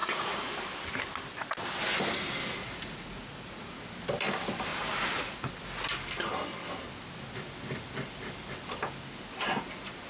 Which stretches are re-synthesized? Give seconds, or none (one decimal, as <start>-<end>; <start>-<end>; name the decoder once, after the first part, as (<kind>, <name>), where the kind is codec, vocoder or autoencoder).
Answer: 0.0-0.5 (vocoder, Vocos); 2.6-3.8; 4.7-5.5